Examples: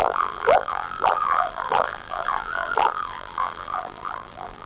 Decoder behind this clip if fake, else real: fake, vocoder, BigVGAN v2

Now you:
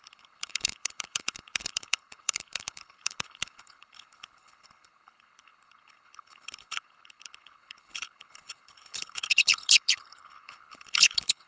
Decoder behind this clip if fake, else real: fake, codec, HILCodec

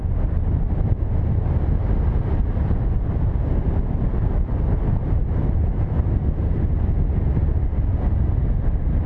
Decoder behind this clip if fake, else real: real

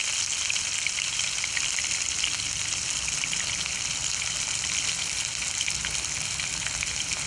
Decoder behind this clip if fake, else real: real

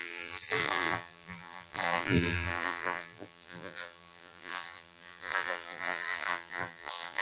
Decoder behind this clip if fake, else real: fake, vocoder, BigVGAN v2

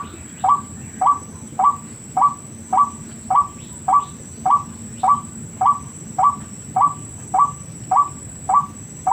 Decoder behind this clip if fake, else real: real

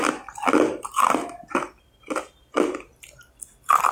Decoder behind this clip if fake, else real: real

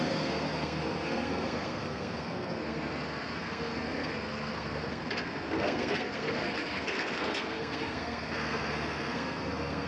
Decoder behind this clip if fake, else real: fake, codec, SNAC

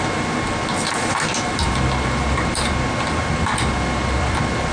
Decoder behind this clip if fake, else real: real